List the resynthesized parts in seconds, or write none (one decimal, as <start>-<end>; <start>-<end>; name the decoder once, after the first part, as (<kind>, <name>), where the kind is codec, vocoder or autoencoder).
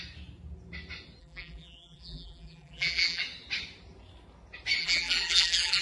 1.2-3.2 (vocoder, BigVGAN v2); 4.8-5.8